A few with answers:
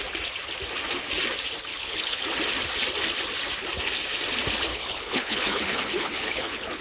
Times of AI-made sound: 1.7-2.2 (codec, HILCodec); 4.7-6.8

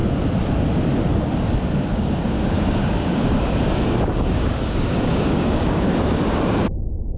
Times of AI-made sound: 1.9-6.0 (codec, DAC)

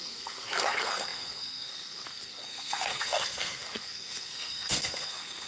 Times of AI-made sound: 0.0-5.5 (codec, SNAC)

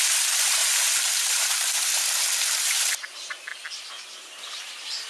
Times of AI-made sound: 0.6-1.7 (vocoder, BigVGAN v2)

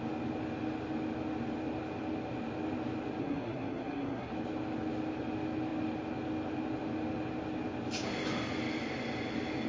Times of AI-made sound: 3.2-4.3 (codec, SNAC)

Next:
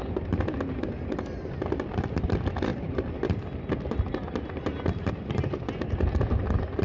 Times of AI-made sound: none

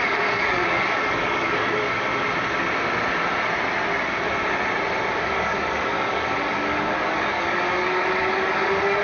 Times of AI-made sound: 0.0-2.1 (codec, DAC); 5.1-9.0